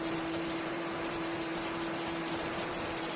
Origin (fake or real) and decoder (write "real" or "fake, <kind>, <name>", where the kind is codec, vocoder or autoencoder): fake, vocoder, BigVGAN v2